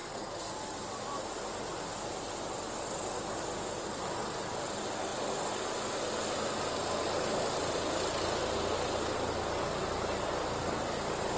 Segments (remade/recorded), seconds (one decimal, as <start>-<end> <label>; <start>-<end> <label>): 0.0-0.5 remade; 0.5-11.4 recorded